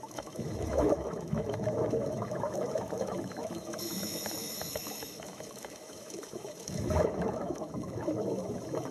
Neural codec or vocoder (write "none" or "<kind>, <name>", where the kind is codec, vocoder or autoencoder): autoencoder, DAC-VAE